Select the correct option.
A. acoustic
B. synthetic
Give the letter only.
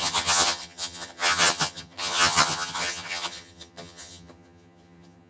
B